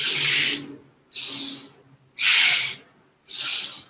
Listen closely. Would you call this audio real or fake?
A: real